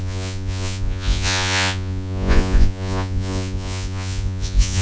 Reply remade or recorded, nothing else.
remade